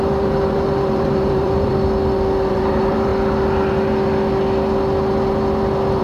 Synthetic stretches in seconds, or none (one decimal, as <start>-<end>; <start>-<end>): 0.0-1.7; 2.5-3.1